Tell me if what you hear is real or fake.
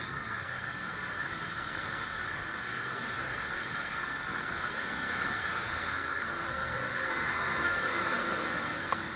fake